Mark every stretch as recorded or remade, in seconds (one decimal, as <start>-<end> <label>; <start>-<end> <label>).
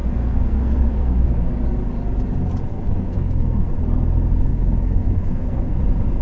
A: 0.0-1.5 remade; 1.5-2.7 recorded; 2.7-3.7 remade; 3.7-4.5 recorded; 4.5-5.8 remade; 5.8-6.2 recorded